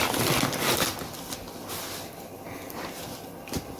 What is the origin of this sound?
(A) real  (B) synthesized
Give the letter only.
A